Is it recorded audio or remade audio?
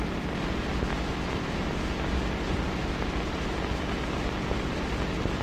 recorded